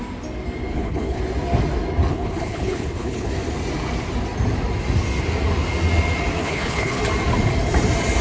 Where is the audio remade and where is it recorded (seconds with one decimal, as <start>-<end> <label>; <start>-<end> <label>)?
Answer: 0.0-0.7 recorded; 0.7-1.2 remade; 1.2-2.1 recorded; 2.1-3.3 remade; 3.3-6.4 recorded; 6.4-7.0 remade; 7.0-8.2 recorded